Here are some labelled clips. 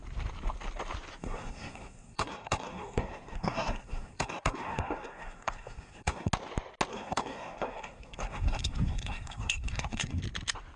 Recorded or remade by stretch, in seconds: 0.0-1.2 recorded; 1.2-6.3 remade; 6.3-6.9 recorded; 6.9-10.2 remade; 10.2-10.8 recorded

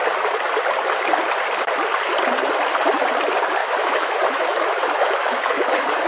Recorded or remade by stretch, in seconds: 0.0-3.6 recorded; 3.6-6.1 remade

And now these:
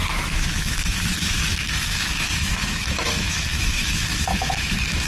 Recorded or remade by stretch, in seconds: 0.0-5.1 remade

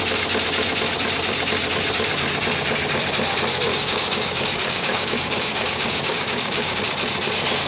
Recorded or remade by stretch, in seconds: 0.0-3.7 recorded; 3.7-6.8 remade; 6.8-7.7 recorded

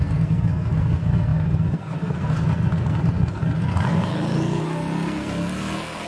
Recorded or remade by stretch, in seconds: 0.0-6.1 remade